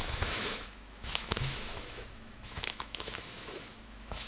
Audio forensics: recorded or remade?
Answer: remade